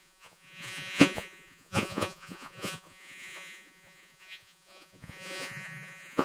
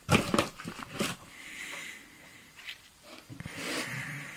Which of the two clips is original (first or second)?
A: second